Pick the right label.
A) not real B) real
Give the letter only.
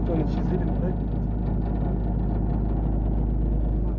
B